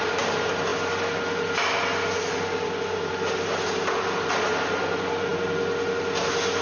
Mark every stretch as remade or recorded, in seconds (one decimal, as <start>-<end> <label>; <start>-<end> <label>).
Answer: 0.0-6.6 recorded